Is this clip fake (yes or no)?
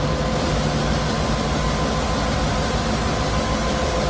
no